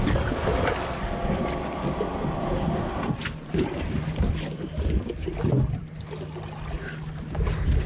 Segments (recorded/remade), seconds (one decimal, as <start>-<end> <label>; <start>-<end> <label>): 0.0-2.1 recorded; 2.1-4.3 remade; 4.3-7.9 recorded